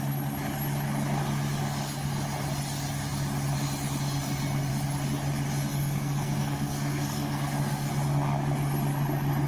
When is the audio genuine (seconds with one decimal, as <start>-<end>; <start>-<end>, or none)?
0.0-5.7; 7.9-9.5